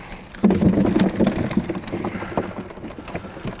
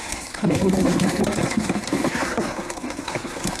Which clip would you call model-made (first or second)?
second